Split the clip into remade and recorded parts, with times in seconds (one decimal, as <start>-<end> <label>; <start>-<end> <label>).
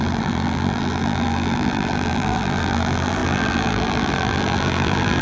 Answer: 0.0-5.2 remade